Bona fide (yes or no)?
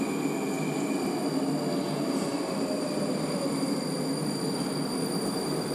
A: yes